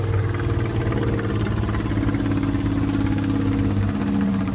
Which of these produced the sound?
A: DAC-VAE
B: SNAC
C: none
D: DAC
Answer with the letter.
C